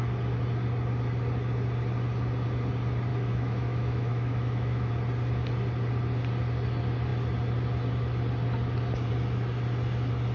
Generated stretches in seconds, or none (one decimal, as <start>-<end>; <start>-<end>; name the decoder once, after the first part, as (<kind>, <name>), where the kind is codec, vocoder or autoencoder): 3.1-4.9 (autoencoder, DAC-VAE)

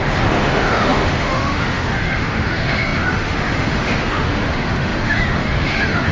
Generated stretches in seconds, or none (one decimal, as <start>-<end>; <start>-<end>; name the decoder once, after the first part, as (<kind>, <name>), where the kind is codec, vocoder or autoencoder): 0.0-6.1 (autoencoder, DAC-VAE)

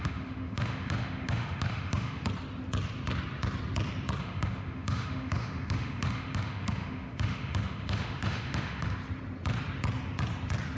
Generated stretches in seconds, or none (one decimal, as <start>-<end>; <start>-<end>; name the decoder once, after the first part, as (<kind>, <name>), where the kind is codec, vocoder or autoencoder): 0.0-2.2 (autoencoder, DAC-VAE); 4.2-9.0

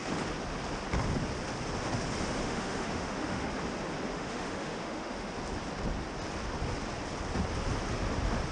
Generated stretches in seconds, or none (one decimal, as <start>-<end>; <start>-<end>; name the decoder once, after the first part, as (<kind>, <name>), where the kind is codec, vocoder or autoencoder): 2.4-3.5 (autoencoder, DAC-VAE); 4.1-5.3

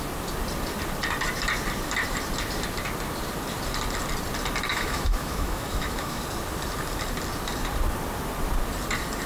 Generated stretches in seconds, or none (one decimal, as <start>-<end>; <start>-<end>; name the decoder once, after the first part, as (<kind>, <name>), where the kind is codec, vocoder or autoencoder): 4.7-6.2 (autoencoder, DAC-VAE)

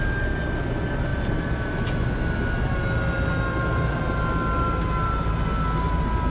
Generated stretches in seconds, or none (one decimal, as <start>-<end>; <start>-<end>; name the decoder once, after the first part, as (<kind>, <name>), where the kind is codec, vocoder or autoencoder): none

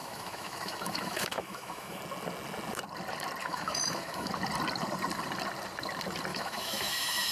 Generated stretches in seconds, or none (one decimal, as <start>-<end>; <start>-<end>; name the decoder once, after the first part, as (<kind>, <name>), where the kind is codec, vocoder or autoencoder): 0.0-2.0 (autoencoder, DAC-VAE); 3.4-4.3; 6.3-7.3